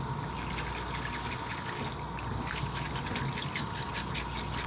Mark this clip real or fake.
real